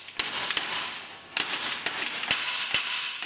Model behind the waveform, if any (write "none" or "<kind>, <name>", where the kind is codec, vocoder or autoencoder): none